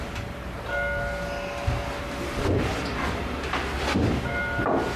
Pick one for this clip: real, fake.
real